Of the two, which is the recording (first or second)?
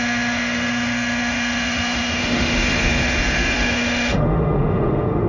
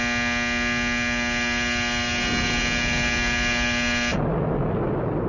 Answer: second